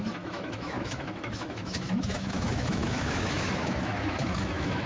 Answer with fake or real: fake